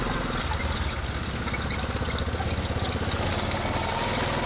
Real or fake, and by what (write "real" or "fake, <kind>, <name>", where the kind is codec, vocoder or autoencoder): real